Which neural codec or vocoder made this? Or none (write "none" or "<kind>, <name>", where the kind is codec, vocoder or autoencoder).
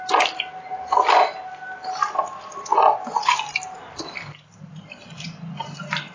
none